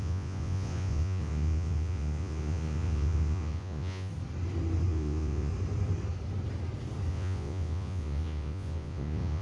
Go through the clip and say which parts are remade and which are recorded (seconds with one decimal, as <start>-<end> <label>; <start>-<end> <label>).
0.0-4.1 remade; 4.1-4.9 recorded; 4.9-5.5 remade; 5.5-7.1 recorded; 7.1-9.4 remade